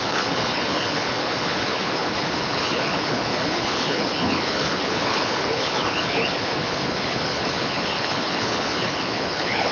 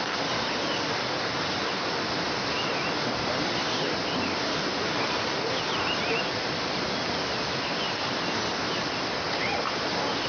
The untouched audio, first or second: second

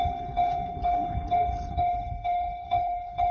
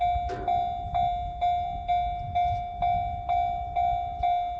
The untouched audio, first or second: second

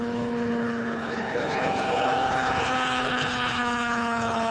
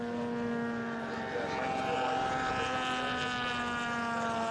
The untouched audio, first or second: second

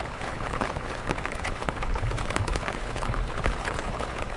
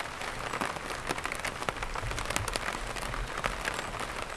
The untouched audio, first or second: second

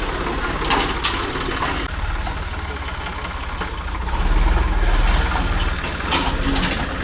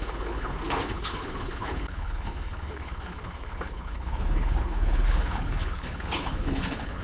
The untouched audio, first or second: first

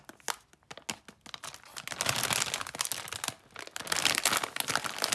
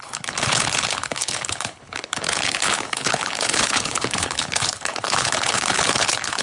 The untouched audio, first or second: first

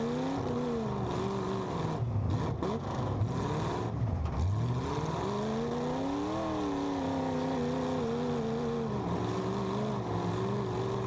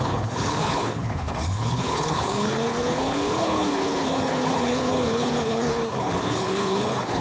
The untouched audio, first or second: first